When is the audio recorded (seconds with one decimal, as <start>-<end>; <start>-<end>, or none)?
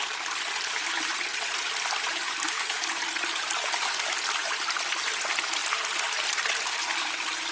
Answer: 0.0-7.5